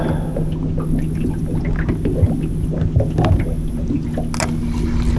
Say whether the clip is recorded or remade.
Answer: recorded